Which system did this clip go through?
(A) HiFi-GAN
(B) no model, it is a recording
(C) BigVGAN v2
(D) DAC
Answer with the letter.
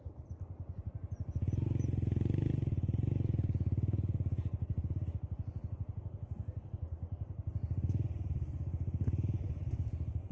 B